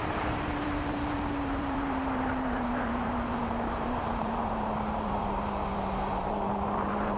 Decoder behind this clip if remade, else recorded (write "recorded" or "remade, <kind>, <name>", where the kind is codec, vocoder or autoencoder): remade, vocoder, BigVGAN v2